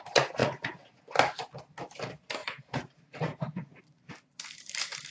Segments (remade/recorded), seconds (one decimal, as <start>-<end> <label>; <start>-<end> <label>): 0.0-0.4 recorded; 0.4-1.0 remade; 1.0-2.4 recorded; 2.4-3.8 remade; 3.8-5.1 recorded